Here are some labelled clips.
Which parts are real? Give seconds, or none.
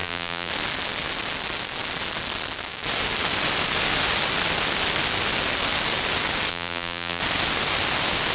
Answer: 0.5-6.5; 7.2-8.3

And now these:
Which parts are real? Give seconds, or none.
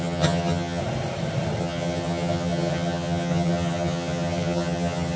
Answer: 0.8-1.6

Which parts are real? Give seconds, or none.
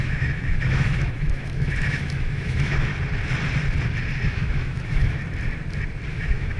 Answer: 2.9-4.3; 5.2-6.1